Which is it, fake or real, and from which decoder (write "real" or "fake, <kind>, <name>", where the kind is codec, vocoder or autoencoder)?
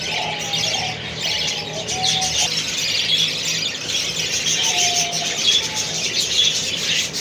real